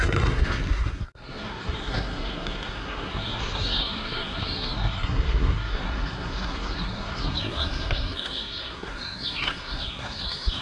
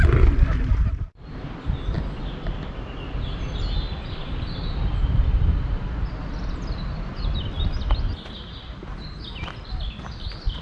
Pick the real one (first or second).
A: second